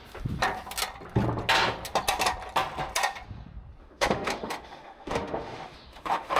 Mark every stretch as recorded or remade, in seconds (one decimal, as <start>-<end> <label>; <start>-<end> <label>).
0.0-3.8 recorded; 3.8-6.4 remade